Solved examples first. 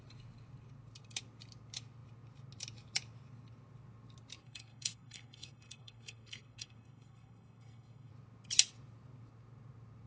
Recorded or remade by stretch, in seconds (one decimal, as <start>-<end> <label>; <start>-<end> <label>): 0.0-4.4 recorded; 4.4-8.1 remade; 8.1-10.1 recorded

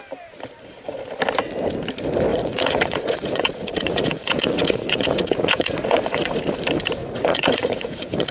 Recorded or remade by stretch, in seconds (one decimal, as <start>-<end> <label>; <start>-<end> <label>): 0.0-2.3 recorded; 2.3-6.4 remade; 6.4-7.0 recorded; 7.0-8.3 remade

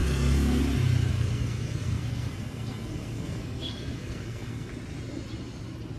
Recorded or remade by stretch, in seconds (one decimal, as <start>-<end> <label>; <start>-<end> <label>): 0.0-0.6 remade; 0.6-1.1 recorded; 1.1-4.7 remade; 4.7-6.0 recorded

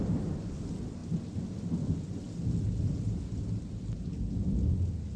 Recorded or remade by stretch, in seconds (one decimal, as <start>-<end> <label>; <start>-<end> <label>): 0.0-5.2 recorded